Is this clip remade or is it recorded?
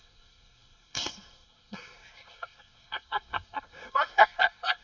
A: remade